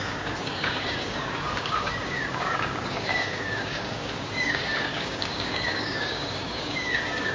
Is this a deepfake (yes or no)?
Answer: yes